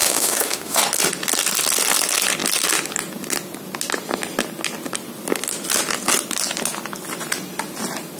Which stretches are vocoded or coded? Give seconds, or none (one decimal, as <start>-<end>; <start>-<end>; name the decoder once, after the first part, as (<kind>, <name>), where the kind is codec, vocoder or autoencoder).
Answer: 0.0-0.8 (autoencoder, DAC-VAE)